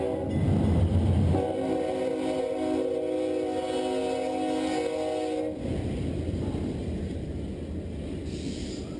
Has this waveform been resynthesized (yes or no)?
no